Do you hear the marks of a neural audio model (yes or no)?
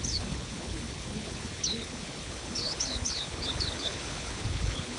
yes